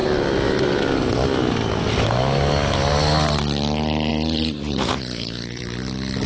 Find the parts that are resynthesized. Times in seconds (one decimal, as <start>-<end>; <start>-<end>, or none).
4.1-5.6